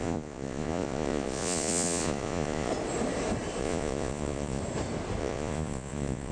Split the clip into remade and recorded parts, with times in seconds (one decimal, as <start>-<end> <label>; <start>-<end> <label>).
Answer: 0.0-2.7 remade; 2.7-3.6 recorded; 3.6-4.6 remade; 4.6-5.2 recorded; 5.2-6.3 remade